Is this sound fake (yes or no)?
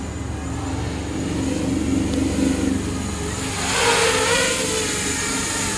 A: no